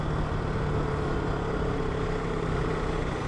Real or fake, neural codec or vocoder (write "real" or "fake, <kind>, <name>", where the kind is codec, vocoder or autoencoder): real